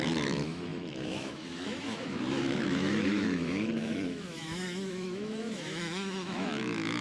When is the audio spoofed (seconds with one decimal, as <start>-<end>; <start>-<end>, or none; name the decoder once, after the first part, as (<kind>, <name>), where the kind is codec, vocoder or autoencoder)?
0.0-7.0 (autoencoder, DAC-VAE)